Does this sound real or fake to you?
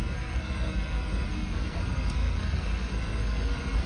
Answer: fake